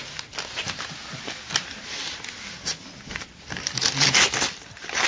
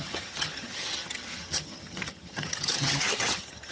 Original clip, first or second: first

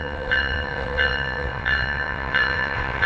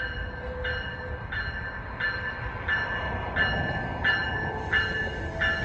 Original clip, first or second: second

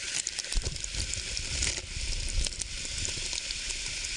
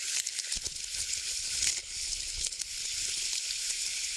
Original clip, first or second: first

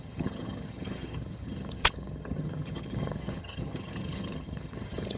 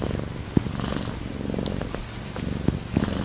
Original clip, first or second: second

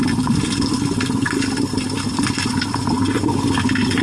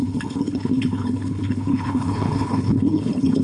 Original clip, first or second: first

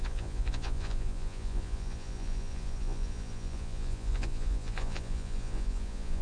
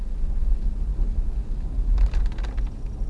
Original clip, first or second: second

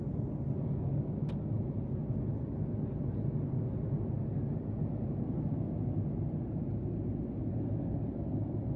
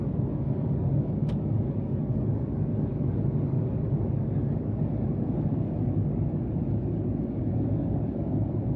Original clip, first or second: first